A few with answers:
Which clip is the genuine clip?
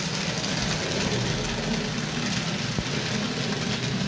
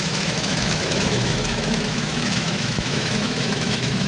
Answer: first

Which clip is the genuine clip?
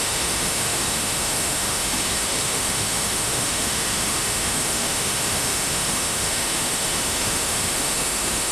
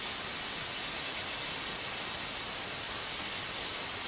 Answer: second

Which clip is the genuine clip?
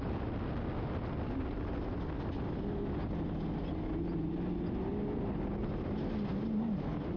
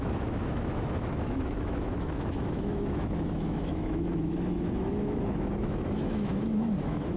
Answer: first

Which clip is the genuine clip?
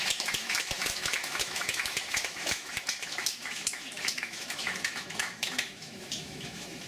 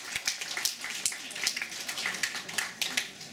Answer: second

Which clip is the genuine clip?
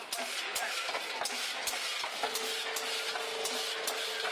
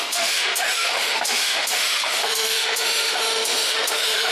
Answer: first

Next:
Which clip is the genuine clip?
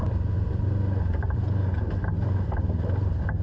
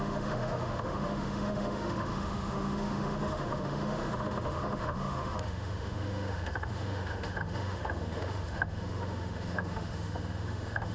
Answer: first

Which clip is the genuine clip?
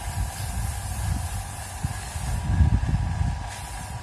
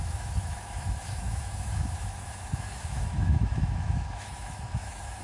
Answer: first